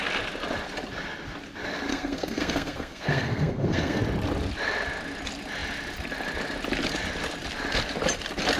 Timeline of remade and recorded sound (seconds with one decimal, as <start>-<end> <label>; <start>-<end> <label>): 0.0-1.9 recorded; 1.9-4.0 remade; 4.0-8.6 recorded